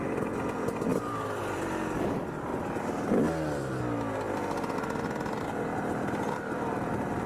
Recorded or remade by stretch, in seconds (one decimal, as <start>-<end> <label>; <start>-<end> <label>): 0.0-7.3 recorded